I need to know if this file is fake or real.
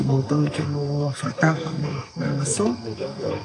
fake